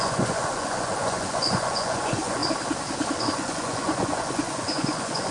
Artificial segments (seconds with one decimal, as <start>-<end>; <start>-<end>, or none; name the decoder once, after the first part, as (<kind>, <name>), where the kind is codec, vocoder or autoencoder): 0.0-2.4 (vocoder, Vocos); 3.2-5.3